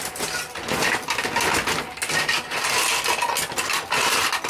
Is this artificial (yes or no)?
no